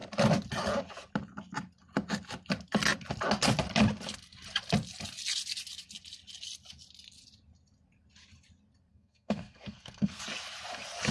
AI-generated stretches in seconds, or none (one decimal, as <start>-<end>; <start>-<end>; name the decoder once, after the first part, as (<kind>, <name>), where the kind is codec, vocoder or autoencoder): 8.9-10.2 (codec, SNAC)